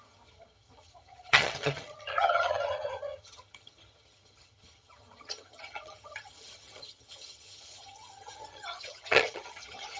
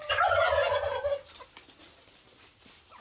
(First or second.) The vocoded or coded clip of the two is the first